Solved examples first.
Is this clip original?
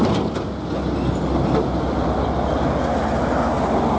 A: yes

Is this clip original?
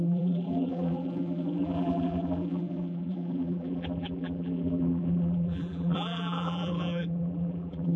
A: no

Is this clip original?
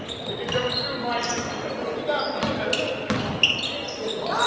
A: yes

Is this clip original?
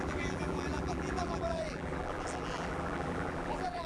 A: no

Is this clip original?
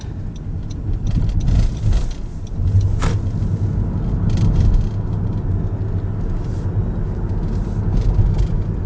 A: yes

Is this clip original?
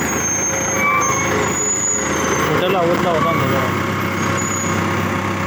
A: yes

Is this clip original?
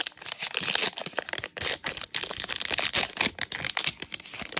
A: yes